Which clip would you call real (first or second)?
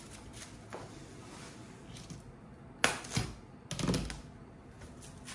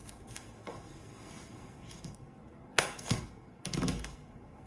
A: first